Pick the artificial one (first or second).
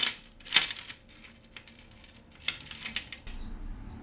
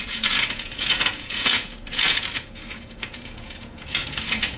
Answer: second